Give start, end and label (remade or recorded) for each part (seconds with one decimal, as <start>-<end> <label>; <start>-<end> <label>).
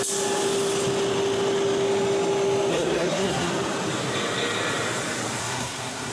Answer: 0.0-2.7 recorded; 2.7-3.5 remade; 3.5-5.4 recorded; 5.4-6.1 remade